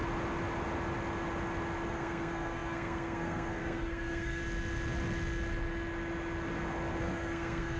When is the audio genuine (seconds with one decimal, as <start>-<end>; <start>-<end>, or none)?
0.0-1.9; 4.4-7.0